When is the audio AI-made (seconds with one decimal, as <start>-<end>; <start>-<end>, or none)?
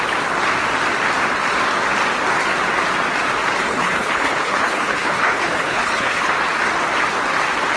3.7-6.3